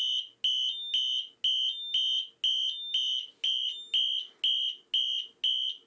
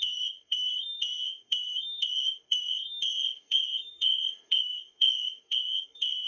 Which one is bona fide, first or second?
first